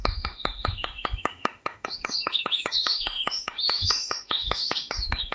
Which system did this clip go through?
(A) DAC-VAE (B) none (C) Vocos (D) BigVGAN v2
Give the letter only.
A